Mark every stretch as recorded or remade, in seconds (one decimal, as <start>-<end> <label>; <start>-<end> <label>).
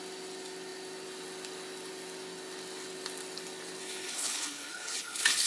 0.0-3.8 recorded; 3.8-5.5 remade